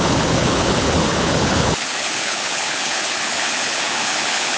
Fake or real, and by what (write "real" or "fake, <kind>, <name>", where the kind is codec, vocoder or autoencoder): fake, codec, HILCodec